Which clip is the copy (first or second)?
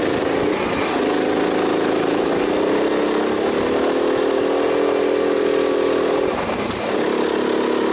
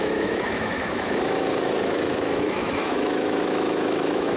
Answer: second